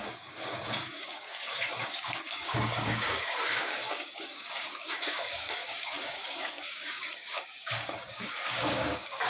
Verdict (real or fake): fake